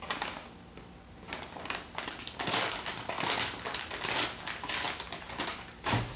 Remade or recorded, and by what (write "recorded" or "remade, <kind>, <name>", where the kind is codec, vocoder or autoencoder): recorded